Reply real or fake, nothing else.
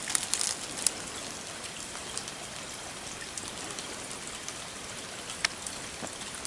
real